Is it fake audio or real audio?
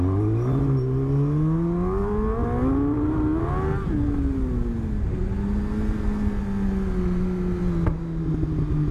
real